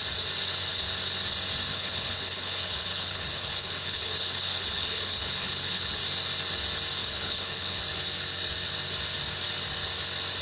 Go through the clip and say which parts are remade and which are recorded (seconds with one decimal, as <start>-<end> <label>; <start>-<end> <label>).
0.0-1.7 recorded; 1.7-6.0 remade; 6.0-7.0 recorded; 7.0-7.8 remade; 7.8-10.4 recorded